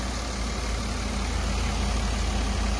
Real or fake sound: real